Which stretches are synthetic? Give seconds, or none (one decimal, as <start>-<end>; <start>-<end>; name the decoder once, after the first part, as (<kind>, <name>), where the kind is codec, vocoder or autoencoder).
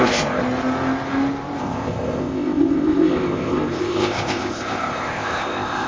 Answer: 0.0-0.4 (codec, ZipCodec); 1.6-5.9